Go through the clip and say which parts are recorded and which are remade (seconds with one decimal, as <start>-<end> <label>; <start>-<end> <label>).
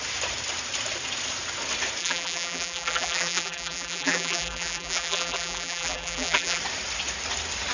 0.0-2.0 recorded; 2.0-6.6 remade; 6.6-7.7 recorded